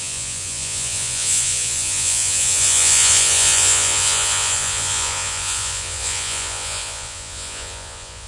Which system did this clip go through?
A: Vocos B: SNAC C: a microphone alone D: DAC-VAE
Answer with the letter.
A